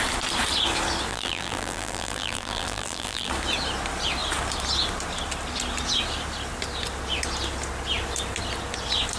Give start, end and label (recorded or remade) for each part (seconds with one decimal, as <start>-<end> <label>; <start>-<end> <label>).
0.0-1.1 recorded; 1.1-3.3 remade; 3.3-9.2 recorded